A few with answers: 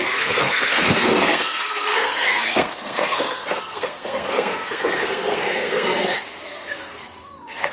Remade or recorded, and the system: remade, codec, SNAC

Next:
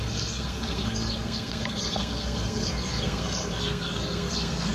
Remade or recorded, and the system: remade, codec, SNAC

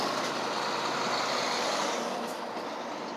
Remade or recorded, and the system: recorded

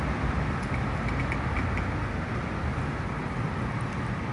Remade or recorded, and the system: recorded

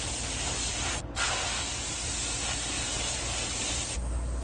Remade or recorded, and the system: recorded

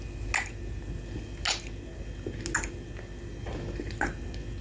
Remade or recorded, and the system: recorded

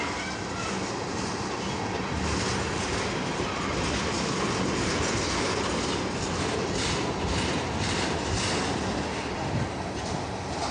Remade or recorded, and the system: recorded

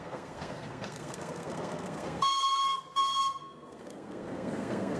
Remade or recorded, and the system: remade, codec, SNAC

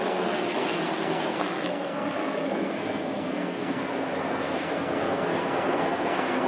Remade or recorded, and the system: remade, codec, SNAC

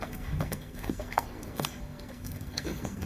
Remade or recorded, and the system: remade, codec, SNAC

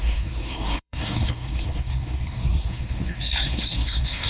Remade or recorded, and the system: remade, codec, SNAC